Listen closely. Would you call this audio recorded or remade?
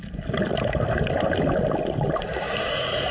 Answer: recorded